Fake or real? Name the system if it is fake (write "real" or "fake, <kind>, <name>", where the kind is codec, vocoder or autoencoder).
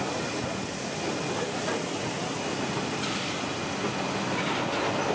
real